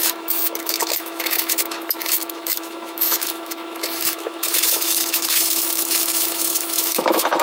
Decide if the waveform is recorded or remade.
remade